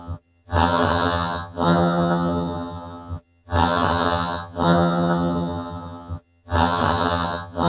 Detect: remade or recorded remade